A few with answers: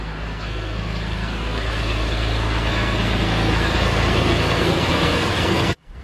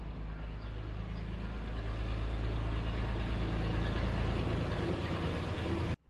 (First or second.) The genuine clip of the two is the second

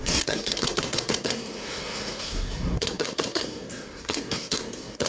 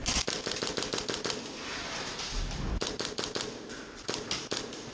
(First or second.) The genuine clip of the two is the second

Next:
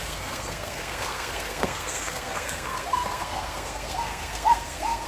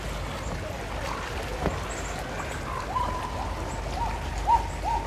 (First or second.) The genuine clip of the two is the second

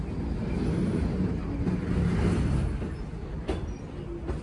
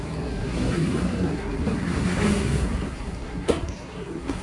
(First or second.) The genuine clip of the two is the first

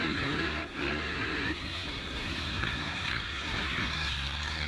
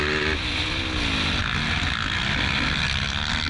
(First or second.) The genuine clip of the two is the second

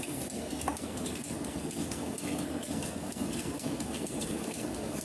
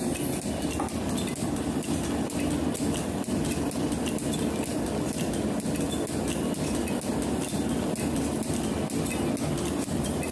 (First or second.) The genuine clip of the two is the second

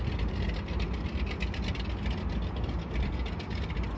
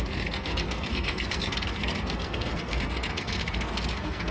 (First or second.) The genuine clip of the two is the first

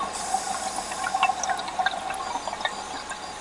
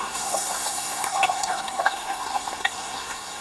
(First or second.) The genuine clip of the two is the first